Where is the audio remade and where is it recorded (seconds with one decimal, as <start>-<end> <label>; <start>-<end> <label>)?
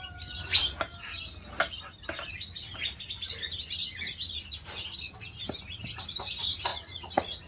0.0-6.7 recorded; 6.7-7.5 remade